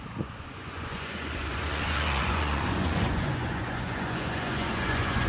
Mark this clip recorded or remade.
remade